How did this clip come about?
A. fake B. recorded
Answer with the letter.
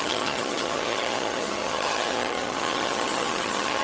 A